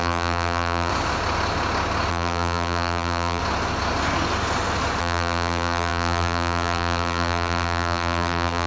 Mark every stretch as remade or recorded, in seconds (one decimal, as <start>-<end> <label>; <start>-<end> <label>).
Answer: 0.0-0.9 remade; 0.9-2.1 recorded; 2.1-3.4 remade; 3.4-5.0 recorded; 5.0-8.7 remade

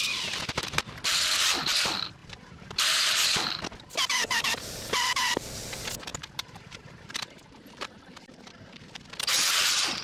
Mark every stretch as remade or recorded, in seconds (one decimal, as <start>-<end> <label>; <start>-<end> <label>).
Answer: 0.0-2.2 recorded; 2.2-3.1 remade; 3.1-6.1 recorded; 6.1-8.9 remade; 8.9-10.0 recorded

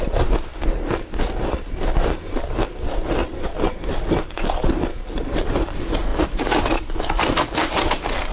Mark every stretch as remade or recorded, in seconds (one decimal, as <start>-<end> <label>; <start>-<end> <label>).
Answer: 0.0-0.5 remade; 0.5-4.7 recorded; 4.7-8.3 remade

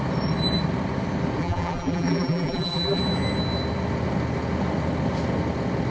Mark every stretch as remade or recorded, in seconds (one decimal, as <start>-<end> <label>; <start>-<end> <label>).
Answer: 0.0-1.4 recorded; 1.4-3.0 remade; 3.0-5.9 recorded

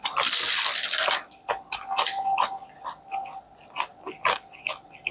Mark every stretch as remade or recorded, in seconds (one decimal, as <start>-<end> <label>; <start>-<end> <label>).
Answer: 0.0-5.1 recorded